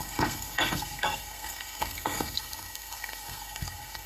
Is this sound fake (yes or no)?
yes